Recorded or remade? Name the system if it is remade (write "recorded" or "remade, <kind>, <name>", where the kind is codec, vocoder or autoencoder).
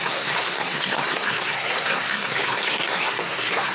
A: remade, codec, SNAC